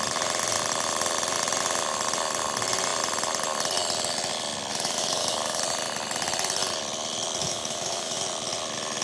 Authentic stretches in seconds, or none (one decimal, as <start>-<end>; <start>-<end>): 0.0-4.7; 5.6-7.4; 8.2-9.0

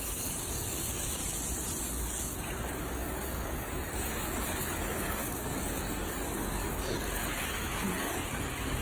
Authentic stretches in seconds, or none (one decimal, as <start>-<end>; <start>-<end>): 1.2-1.8

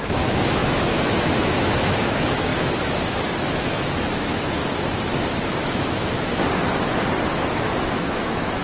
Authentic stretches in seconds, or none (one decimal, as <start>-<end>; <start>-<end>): 4.6-5.4; 6.3-7.4

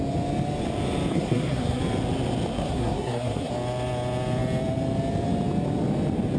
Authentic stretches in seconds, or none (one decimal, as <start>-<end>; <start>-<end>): 0.0-1.1; 1.8-2.5; 3.5-6.4

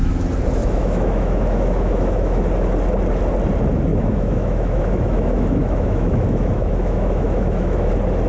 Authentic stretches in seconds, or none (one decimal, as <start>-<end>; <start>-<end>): 0.0-0.6; 2.4-3.9; 7.9-8.3

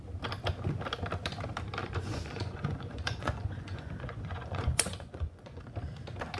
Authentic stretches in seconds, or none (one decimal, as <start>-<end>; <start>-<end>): 0.0-1.8; 5.6-6.4

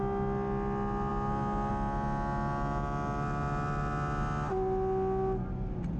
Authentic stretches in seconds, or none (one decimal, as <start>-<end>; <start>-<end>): 0.0-6.0